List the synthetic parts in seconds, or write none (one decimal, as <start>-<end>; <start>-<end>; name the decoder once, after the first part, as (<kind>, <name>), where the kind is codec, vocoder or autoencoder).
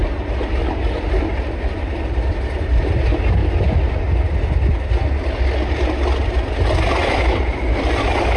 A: 0.0-3.4 (vocoder, BigVGAN v2); 6.9-8.4